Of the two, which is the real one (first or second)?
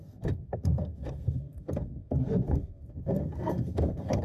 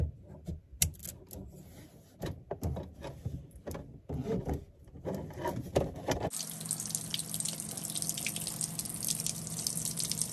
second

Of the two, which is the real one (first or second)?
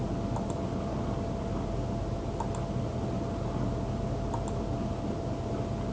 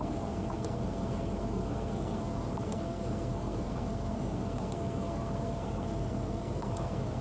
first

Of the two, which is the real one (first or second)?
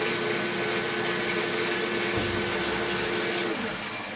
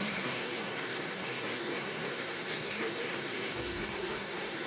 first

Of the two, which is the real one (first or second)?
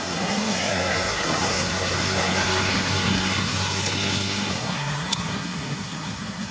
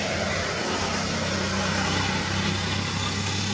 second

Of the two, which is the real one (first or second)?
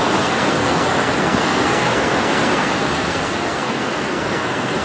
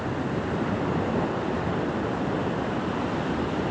second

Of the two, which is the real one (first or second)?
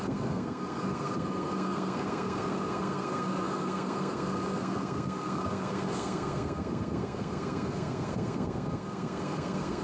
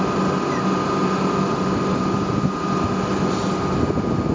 second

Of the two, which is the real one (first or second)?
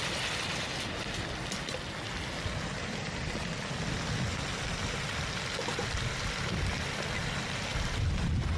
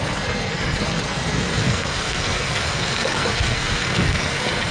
first